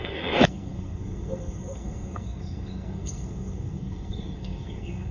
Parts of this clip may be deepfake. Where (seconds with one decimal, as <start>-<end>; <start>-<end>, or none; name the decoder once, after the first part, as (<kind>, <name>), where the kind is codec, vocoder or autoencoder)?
0.0-5.1 (codec, SNAC)